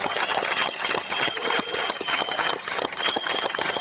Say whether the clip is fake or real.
fake